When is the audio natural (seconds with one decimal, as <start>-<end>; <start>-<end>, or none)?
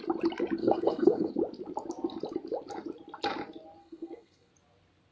0.0-0.6; 1.3-3.8; 4.5-5.1